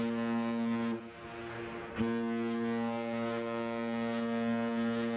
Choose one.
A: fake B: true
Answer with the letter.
B